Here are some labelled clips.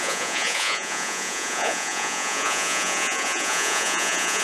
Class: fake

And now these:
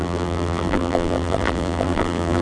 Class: fake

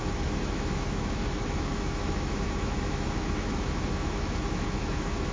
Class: fake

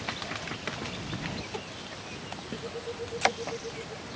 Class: real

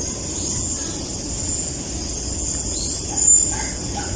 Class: real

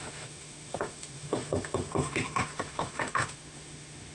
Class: fake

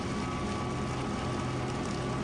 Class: real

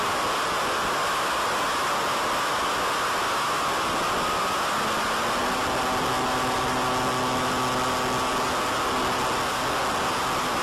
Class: real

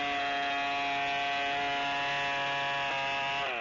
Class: real